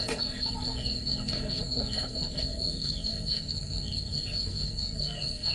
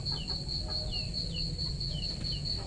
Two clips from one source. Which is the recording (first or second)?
second